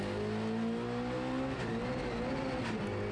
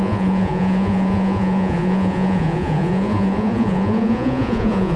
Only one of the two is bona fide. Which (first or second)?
first